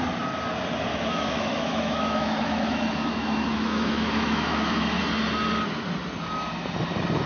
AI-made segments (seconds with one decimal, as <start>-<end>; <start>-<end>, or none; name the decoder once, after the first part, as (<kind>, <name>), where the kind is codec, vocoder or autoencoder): 0.9-5.0 (autoencoder, DAC-VAE)